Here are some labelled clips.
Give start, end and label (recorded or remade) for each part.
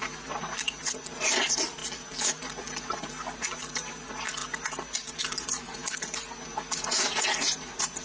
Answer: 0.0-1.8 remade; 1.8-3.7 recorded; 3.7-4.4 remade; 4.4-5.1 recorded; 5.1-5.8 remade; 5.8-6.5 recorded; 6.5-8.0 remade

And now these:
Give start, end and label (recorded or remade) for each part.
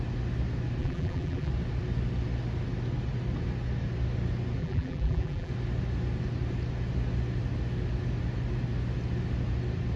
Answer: 0.0-0.8 recorded; 0.8-1.5 remade; 1.5-4.6 recorded; 4.6-5.5 remade; 5.5-10.0 recorded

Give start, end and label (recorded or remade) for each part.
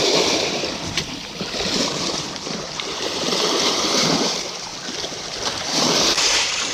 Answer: 0.0-4.7 remade; 4.7-6.0 recorded; 6.0-6.7 remade